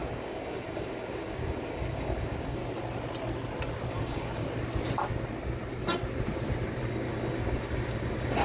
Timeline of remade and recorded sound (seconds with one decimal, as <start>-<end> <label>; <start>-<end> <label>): 0.0-2.6 remade; 2.6-3.9 recorded; 3.9-4.4 remade; 4.4-6.8 recorded; 6.8-8.4 remade